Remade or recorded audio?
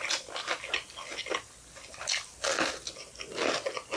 recorded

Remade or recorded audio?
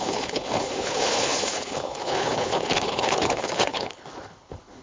remade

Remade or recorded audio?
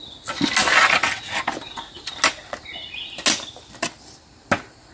recorded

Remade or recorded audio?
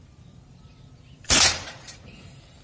remade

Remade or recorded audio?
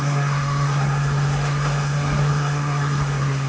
remade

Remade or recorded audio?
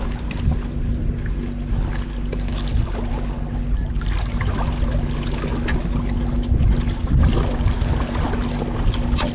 recorded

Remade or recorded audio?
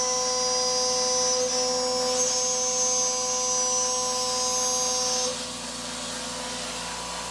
recorded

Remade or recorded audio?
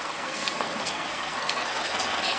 remade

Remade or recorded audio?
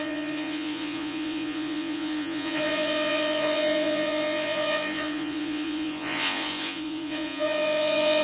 remade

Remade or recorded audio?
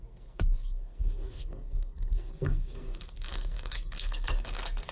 remade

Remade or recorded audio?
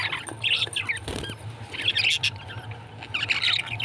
recorded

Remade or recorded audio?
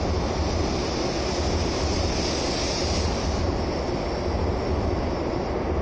recorded